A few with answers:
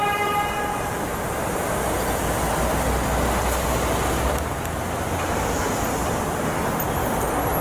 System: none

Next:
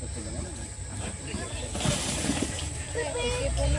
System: vocoder, BigVGAN v2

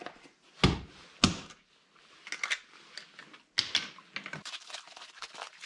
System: none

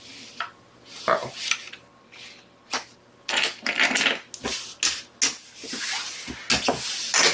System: none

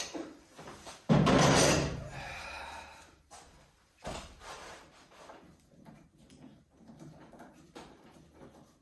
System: vocoder, BigVGAN v2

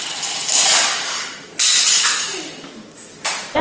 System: none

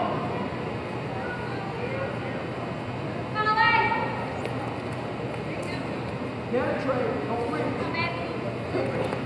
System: none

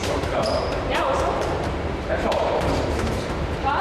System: vocoder, BigVGAN v2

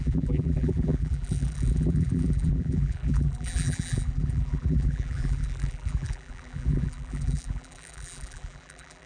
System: vocoder, BigVGAN v2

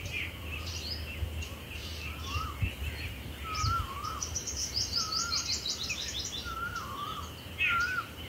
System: vocoder, BigVGAN v2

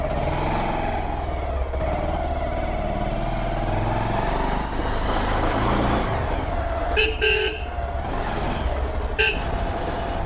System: none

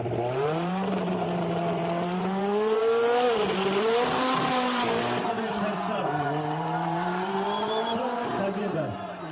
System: vocoder, BigVGAN v2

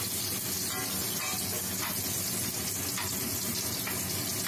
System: none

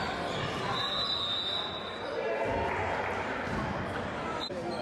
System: none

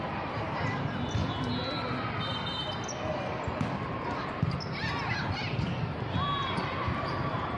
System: none